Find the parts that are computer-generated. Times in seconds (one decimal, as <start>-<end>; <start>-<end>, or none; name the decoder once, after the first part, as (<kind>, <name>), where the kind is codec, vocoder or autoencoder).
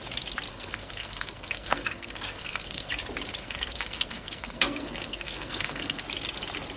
0.5-2.9 (codec, SNAC); 3.4-6.0